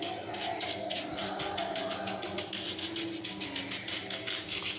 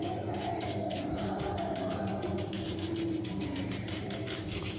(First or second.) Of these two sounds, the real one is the first